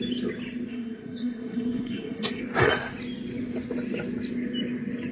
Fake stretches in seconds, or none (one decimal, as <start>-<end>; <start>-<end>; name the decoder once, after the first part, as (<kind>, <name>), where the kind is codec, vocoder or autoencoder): 0.7-2.4 (codec, SNAC)